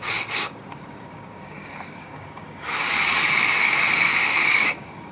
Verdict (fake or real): fake